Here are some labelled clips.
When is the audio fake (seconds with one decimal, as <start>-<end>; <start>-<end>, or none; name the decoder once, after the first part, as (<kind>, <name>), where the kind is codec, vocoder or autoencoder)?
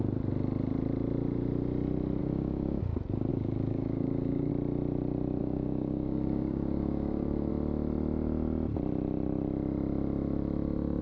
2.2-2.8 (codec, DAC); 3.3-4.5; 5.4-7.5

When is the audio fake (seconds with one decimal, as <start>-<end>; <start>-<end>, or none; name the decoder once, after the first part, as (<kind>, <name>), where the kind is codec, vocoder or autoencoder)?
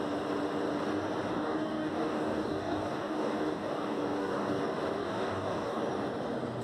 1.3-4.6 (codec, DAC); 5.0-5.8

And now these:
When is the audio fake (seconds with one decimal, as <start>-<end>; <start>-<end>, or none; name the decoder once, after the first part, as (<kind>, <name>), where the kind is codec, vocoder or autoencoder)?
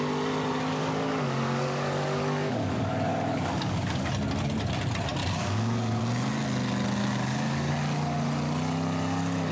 0.8-4.1 (codec, DAC); 5.2-6.0; 7.0-7.7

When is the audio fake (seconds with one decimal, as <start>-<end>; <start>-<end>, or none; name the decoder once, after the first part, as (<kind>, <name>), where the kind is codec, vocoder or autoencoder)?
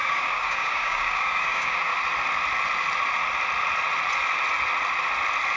0.0-1.9 (codec, DAC)